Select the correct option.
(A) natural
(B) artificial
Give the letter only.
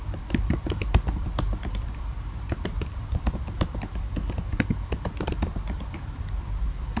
B